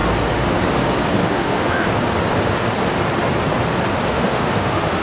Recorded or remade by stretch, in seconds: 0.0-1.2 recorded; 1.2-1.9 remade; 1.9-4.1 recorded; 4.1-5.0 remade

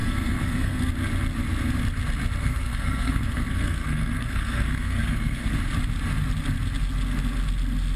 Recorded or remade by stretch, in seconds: 0.0-0.9 remade; 0.9-2.4 recorded; 2.4-5.5 remade; 5.5-8.0 recorded

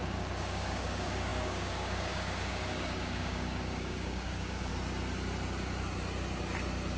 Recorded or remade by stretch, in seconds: 0.0-4.7 remade; 4.7-7.0 recorded

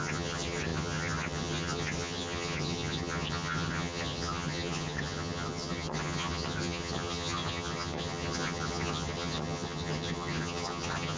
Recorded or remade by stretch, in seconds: 0.0-11.2 remade

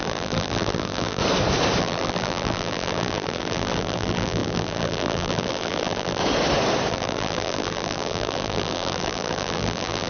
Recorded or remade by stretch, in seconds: 0.0-1.2 remade; 1.2-1.8 recorded; 1.8-6.2 remade; 6.2-6.9 recorded; 6.9-10.1 remade

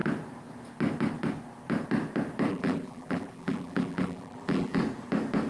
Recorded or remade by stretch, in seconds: 0.0-2.5 recorded; 2.5-4.8 remade; 4.8-5.5 recorded

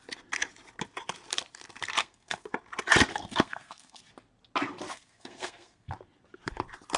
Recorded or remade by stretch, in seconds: 0.0-2.0 recorded; 2.0-2.5 remade; 2.5-3.1 recorded; 3.1-4.0 remade; 4.0-4.9 recorded; 4.9-5.9 remade; 5.9-7.0 recorded